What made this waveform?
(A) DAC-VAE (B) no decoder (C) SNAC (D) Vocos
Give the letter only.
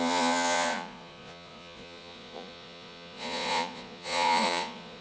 D